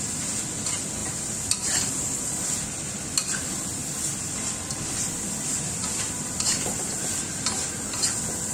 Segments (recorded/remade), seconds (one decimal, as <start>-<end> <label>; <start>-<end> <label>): 0.0-8.5 remade